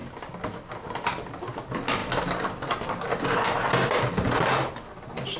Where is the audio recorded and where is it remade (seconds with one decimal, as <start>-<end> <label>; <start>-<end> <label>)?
0.0-5.4 recorded